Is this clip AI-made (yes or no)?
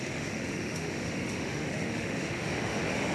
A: yes